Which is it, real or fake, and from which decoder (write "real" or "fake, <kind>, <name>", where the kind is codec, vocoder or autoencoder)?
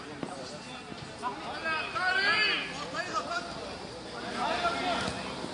real